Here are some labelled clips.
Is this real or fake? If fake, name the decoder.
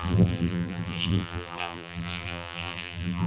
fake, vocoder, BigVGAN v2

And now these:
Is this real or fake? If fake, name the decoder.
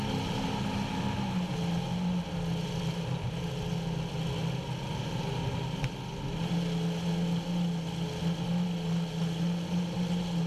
real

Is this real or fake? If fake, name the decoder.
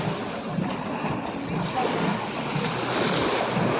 real